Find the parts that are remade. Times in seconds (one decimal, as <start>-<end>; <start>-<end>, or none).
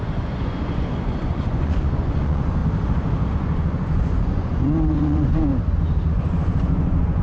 0.0-2.6; 3.3-5.5; 6.1-7.2